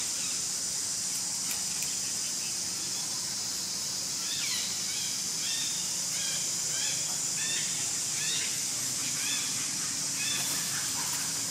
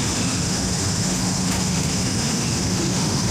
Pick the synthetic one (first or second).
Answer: second